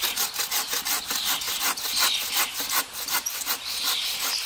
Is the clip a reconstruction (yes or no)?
no